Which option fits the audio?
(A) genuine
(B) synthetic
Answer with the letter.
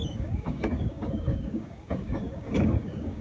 B